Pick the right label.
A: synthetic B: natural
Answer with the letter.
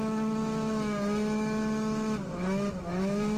A